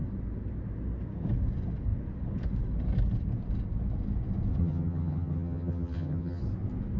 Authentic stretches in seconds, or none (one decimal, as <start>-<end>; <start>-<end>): 0.0-4.6; 6.4-7.0